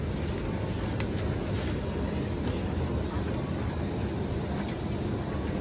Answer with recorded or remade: recorded